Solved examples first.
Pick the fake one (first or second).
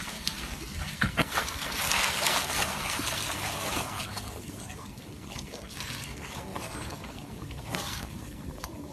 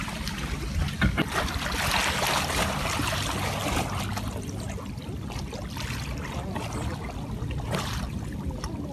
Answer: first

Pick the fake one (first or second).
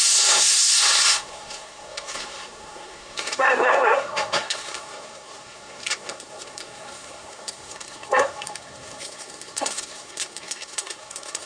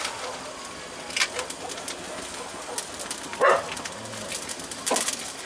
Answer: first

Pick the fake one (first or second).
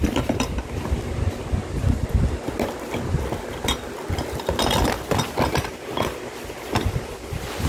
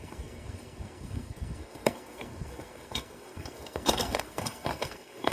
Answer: second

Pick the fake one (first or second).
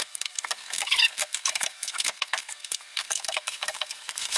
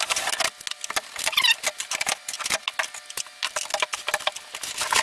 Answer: first